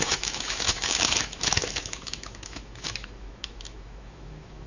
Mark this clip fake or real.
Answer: fake